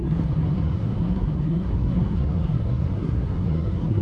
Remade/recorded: remade